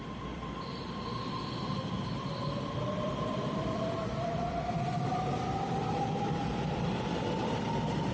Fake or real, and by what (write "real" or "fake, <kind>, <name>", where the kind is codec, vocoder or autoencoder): fake, vocoder, BigVGAN v2